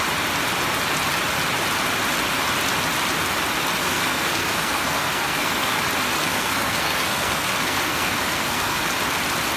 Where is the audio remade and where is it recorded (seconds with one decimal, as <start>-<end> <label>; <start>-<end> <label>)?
0.0-3.8 recorded; 3.8-5.8 remade; 5.8-6.2 recorded; 6.2-8.9 remade; 8.9-9.6 recorded